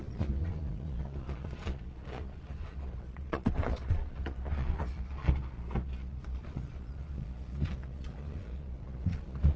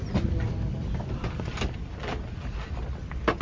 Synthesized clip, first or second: first